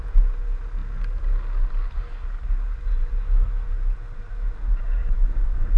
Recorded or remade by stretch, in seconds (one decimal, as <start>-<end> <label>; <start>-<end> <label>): 0.0-5.8 recorded